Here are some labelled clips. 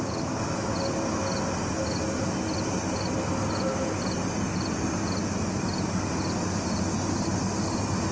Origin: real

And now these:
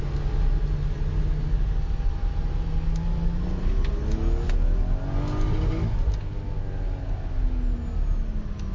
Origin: real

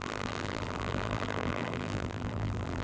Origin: fake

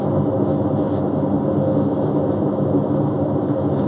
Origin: real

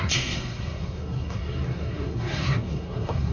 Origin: fake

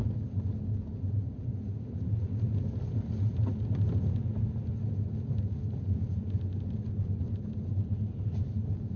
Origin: real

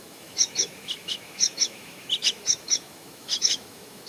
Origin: fake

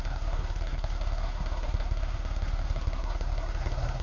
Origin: fake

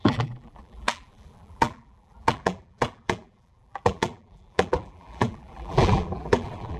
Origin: fake